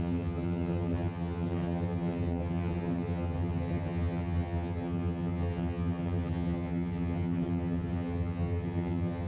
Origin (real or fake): fake